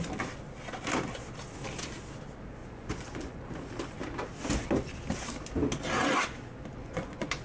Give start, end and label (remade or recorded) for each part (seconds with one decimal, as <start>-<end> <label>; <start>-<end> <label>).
0.0-2.6 recorded; 2.6-3.4 remade; 3.4-6.8 recorded; 6.8-7.4 remade